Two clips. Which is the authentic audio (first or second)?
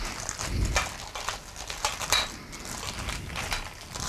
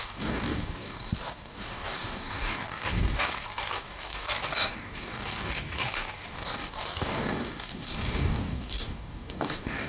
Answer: first